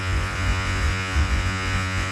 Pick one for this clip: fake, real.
fake